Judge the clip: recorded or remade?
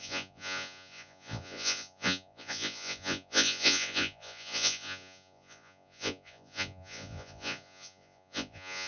remade